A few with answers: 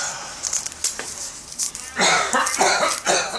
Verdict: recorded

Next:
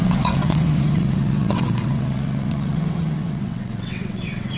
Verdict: remade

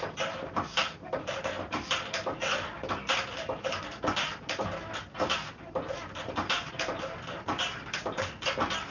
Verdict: recorded